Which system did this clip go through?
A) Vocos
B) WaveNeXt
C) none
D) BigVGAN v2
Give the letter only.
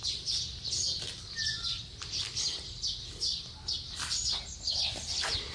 C